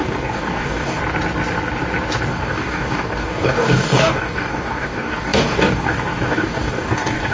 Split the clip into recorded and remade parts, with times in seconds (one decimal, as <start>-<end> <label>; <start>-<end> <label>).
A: 0.0-1.0 remade; 1.0-2.3 recorded; 2.3-7.3 remade